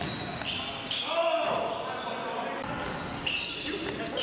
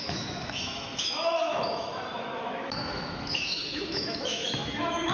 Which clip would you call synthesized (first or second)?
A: second